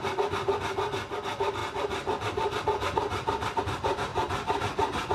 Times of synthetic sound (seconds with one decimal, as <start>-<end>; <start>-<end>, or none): 1.6-3.6